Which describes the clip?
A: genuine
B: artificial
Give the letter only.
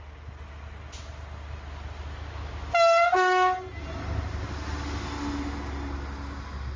A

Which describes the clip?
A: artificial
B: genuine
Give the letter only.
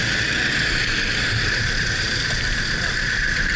A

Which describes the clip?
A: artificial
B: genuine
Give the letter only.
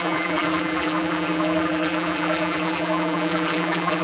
A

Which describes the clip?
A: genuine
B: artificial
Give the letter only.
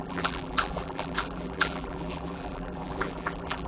B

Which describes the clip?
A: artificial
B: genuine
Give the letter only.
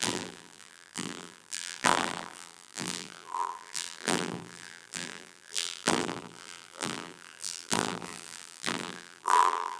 A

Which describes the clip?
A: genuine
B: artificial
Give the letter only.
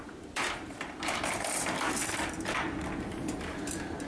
B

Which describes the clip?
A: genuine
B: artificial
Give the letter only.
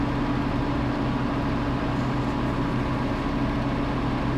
A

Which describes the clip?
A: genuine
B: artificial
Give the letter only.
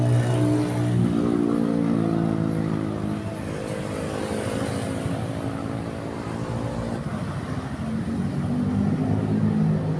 A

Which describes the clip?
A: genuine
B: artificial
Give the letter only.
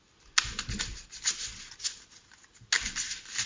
A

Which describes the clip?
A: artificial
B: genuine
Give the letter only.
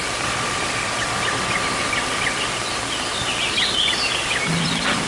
A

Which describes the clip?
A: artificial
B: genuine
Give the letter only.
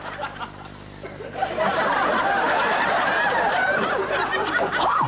A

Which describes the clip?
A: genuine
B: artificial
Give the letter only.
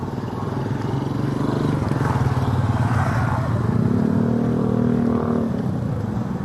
A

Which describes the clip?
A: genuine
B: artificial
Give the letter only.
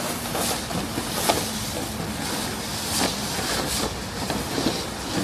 A